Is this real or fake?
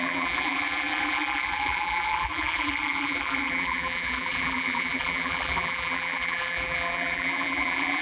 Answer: fake